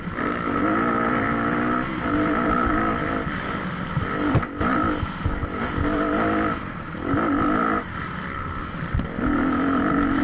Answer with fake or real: real